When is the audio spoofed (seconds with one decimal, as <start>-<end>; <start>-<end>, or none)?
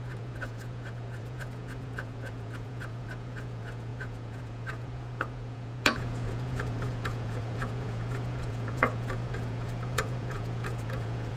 0.0-11.4